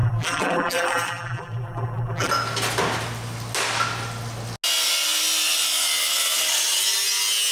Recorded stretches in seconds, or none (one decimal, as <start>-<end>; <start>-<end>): 2.3-7.5